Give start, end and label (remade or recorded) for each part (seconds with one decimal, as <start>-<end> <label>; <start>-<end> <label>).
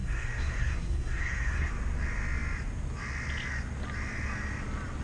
0.0-1.7 remade; 1.7-5.0 recorded